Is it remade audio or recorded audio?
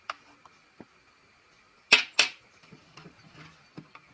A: recorded